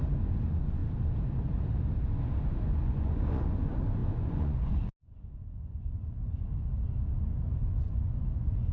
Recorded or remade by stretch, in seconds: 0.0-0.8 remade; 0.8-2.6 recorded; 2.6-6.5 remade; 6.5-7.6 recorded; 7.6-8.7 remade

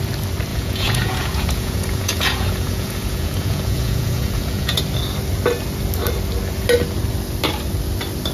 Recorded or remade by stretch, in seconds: 0.0-0.5 recorded; 0.5-4.8 remade; 4.8-8.3 recorded

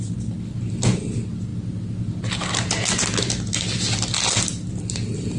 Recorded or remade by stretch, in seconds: 0.0-5.4 recorded

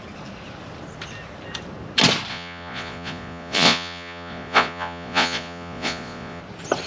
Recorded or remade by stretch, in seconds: 0.0-2.3 recorded; 2.3-6.4 remade; 6.4-6.9 recorded

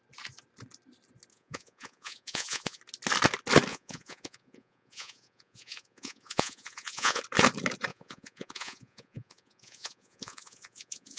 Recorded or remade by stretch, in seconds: 0.0-1.3 recorded; 1.3-2.8 remade; 2.8-3.7 recorded; 3.7-7.2 remade; 7.2-7.9 recorded; 7.9-11.2 remade